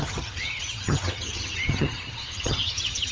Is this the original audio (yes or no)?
no